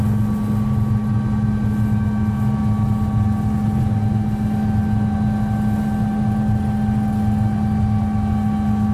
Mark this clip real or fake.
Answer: real